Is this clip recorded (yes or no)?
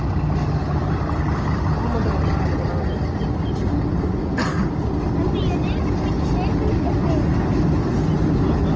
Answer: yes